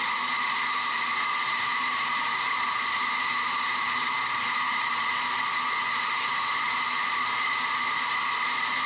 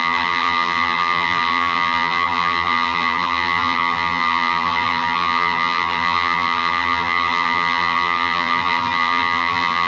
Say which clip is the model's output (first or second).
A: second